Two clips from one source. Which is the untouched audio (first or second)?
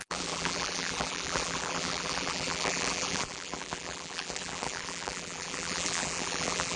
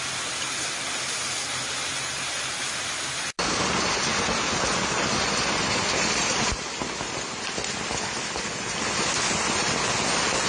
second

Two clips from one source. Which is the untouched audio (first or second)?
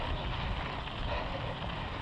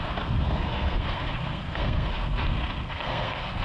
first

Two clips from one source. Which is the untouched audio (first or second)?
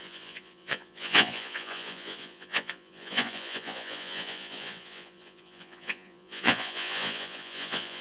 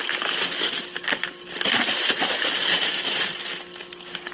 second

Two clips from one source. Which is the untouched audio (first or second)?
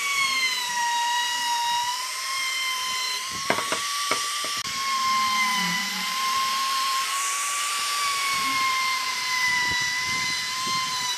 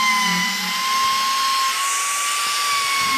second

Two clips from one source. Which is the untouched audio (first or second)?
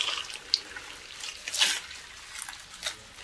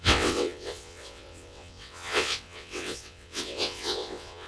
first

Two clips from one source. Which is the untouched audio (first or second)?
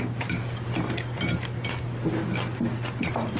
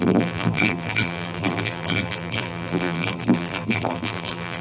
first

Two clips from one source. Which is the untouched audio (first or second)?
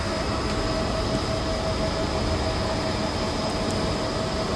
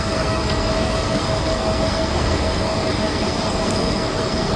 first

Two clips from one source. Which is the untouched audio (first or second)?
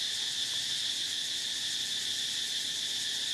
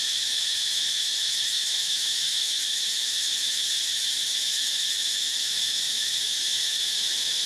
first